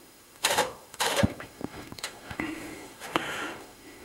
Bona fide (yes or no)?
no